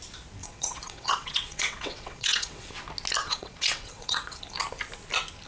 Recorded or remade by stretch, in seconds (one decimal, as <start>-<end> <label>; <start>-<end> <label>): 0.0-0.4 recorded; 0.4-2.7 remade; 2.7-3.2 recorded; 3.2-4.4 remade; 4.4-5.5 recorded